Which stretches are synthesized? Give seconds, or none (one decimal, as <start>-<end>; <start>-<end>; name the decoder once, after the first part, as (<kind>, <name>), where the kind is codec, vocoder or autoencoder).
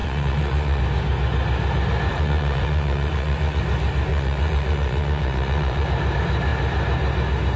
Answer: 0.0-0.8 (vocoder, Vocos); 2.1-3.6; 4.1-5.9